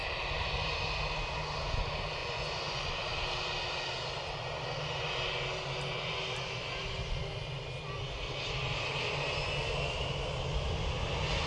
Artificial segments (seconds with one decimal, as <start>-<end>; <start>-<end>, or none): 2.2-2.9